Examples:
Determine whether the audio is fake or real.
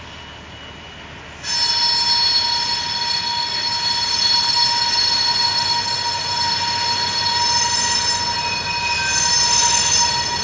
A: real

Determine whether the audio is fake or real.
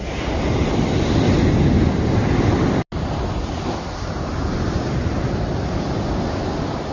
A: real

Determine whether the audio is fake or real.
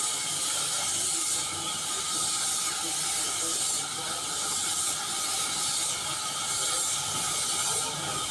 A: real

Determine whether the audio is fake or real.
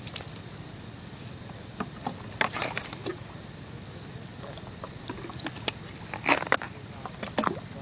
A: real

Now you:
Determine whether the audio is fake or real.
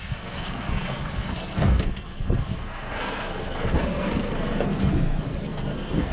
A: fake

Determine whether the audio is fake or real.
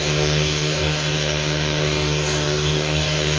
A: fake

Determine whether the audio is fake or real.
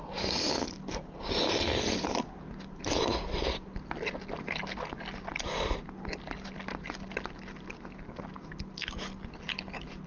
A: real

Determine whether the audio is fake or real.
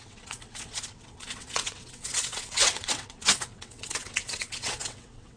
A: fake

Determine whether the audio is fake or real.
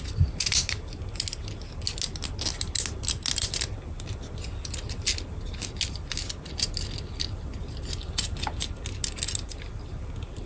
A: real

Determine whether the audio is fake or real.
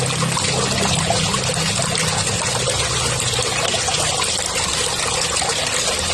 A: real